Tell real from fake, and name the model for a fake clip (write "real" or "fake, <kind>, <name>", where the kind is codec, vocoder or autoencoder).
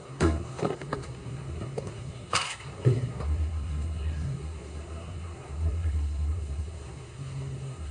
fake, codec, SNAC